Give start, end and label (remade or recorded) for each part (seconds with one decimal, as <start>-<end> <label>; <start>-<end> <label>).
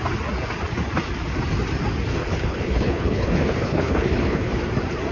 0.0-2.1 recorded; 2.1-4.5 remade; 4.5-5.1 recorded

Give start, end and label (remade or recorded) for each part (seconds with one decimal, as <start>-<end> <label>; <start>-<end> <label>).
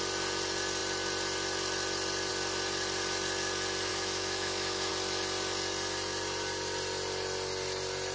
0.0-3.9 recorded; 3.9-4.9 remade; 4.9-8.1 recorded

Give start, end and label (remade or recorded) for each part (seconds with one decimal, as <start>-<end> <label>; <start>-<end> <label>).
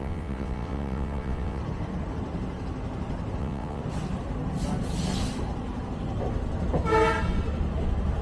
0.0-1.6 remade; 1.6-3.4 recorded; 3.4-3.8 remade; 3.8-8.2 recorded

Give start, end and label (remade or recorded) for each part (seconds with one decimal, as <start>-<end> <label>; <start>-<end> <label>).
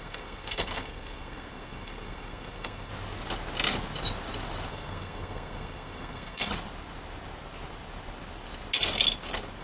0.0-2.9 remade; 2.9-4.7 recorded; 4.7-6.5 remade; 6.5-9.6 recorded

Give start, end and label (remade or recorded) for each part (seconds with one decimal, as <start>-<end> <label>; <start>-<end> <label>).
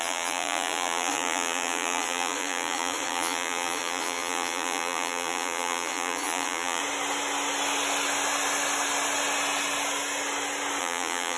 0.0-6.8 remade; 6.8-10.8 recorded; 10.8-11.4 remade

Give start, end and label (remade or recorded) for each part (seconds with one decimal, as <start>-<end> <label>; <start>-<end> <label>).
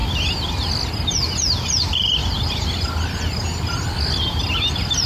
0.0-0.7 remade; 0.7-2.2 recorded; 2.2-5.1 remade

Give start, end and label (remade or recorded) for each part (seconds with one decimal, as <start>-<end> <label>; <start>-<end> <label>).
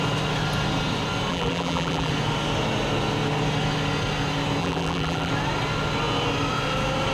0.0-1.3 recorded; 1.3-2.1 remade; 2.1-4.6 recorded; 4.6-5.3 remade; 5.3-7.1 recorded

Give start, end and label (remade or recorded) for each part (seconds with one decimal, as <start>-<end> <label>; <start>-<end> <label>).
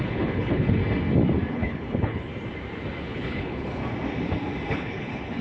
0.0-0.8 remade; 0.8-1.5 recorded; 1.5-2.3 remade; 2.3-3.0 recorded; 3.0-3.8 remade; 3.8-4.7 recorded; 4.7-5.4 remade